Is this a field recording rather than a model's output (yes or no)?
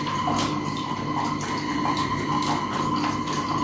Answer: yes